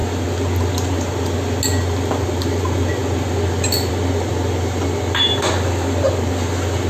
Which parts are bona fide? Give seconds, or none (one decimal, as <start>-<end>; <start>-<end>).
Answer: 0.0-6.9